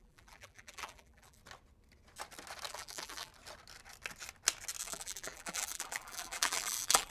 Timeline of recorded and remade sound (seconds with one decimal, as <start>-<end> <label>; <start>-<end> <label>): 0.0-1.4 remade; 1.4-2.7 recorded; 2.7-3.3 remade; 3.3-4.8 recorded; 4.8-7.1 remade